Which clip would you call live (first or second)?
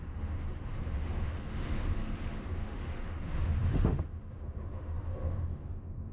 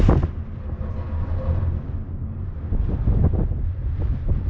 second